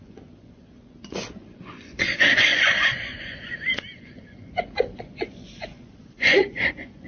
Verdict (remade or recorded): remade